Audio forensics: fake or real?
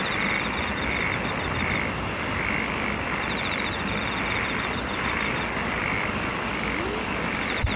real